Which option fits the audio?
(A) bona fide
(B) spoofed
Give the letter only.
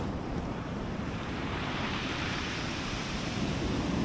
B